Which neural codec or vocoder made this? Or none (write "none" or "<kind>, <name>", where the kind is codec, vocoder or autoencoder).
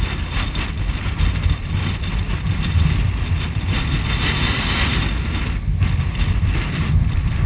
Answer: none